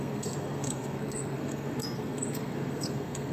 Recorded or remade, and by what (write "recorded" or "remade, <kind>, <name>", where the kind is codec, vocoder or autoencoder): remade, codec, SNAC